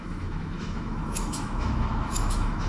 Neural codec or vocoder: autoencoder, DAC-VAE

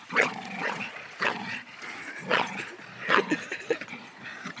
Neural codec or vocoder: vocoder, Vocos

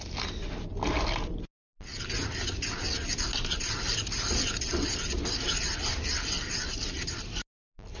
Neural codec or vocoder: none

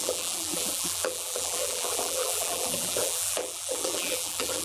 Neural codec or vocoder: vocoder, BigVGAN v2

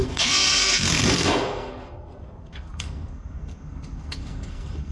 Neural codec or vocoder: codec, SNAC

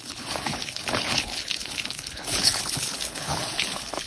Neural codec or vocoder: codec, HILCodec